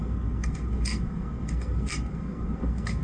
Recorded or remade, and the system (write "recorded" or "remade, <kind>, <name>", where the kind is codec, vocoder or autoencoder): remade, codec, SNAC